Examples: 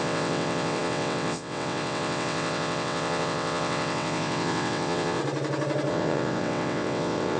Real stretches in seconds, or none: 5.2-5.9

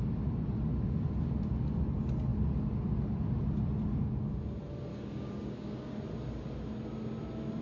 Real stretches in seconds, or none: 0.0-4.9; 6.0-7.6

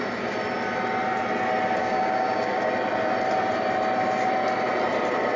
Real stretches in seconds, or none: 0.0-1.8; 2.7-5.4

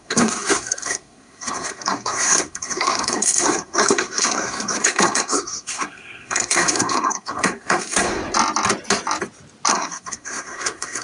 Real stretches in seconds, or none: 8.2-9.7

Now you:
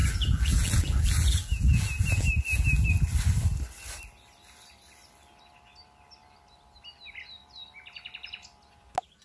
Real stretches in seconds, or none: 2.9-9.2

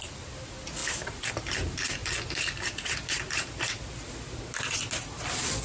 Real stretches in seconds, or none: 0.0-5.6